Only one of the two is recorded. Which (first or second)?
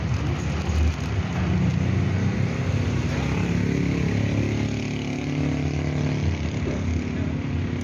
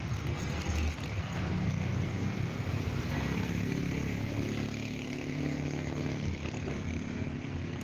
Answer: first